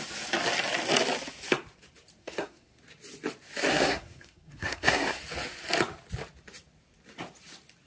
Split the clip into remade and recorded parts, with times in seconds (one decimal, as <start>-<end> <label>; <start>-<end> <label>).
0.0-2.2 recorded; 2.2-2.8 remade; 2.8-3.7 recorded; 3.7-5.2 remade; 5.2-7.9 recorded